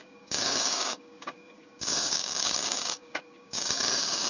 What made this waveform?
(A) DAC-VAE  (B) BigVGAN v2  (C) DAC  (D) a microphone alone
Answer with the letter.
C